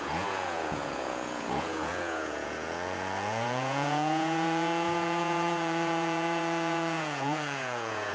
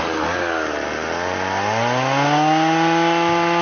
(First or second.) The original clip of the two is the second